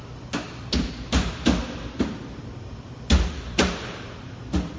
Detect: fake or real real